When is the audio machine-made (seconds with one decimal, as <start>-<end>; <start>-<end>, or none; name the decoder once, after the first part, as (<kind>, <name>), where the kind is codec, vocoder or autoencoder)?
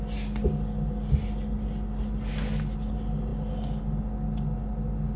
none